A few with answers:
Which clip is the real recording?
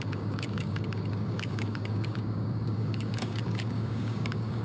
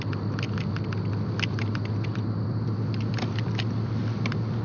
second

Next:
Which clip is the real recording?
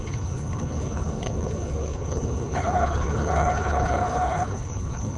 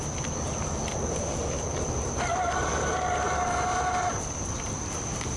second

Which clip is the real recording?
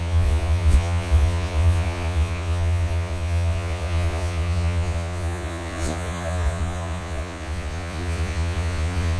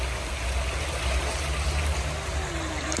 second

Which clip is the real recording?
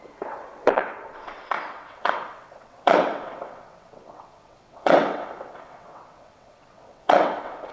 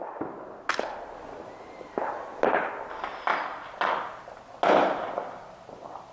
second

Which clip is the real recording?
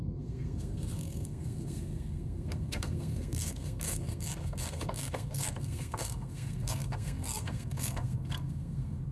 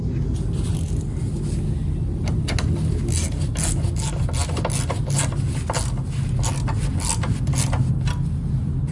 second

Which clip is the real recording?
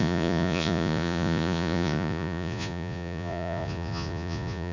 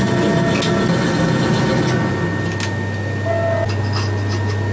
second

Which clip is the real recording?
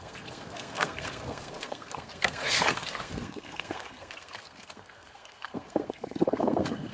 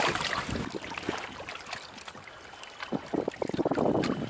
second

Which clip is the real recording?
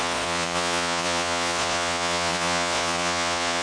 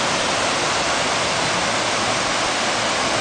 second